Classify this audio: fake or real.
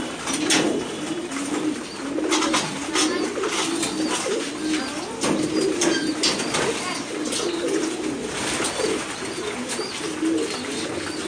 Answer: real